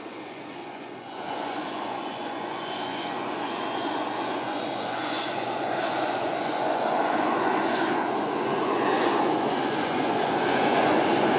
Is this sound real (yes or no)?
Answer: no